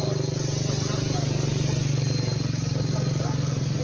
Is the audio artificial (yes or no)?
no